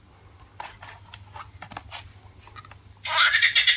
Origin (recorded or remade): recorded